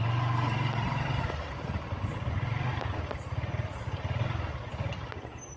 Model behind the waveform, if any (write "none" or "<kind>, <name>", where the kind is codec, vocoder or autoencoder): none